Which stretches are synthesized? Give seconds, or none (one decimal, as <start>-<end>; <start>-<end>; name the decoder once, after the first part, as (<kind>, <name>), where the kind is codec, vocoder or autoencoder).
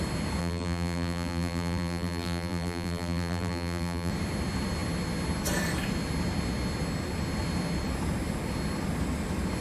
0.4-4.1 (vocoder, BigVGAN v2)